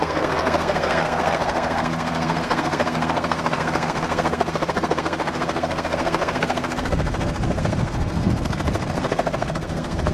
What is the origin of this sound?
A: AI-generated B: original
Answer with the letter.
A